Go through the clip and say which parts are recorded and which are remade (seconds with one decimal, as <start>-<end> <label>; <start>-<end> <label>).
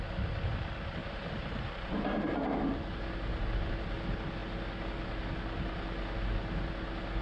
0.0-1.0 recorded; 1.0-3.8 remade; 3.8-7.2 recorded